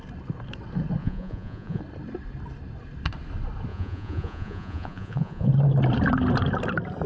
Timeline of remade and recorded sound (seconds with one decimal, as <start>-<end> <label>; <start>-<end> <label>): 0.0-1.0 recorded; 1.0-1.8 remade; 1.8-3.7 recorded; 3.7-5.5 remade; 5.5-7.1 recorded